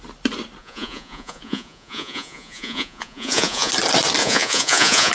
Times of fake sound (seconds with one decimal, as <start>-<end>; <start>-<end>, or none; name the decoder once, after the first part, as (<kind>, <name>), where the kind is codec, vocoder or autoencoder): 0.6-3.7 (vocoder, Vocos); 4.2-5.1